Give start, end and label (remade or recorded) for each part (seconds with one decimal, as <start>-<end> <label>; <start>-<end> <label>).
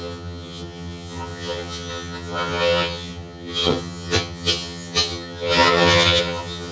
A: 0.0-6.7 remade